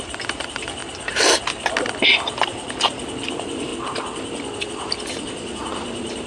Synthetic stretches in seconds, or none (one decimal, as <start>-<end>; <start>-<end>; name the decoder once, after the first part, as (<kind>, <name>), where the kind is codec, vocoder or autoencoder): 0.0-0.8 (vocoder, BigVGAN v2); 3.3-3.7; 4.6-6.3